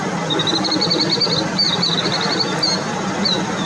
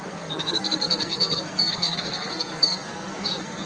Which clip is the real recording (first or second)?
first